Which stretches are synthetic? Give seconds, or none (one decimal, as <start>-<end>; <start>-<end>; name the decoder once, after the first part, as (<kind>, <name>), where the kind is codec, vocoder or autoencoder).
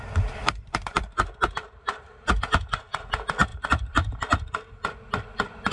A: 0.4-2.3 (vocoder, BigVGAN v2); 3.5-4.5